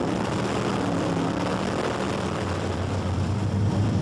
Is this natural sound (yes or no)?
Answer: yes